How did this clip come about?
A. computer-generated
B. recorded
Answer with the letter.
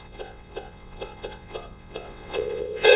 A